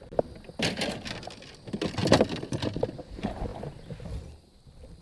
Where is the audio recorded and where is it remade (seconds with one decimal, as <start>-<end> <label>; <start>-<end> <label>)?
0.0-5.0 recorded